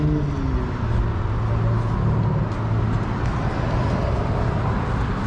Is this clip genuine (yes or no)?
yes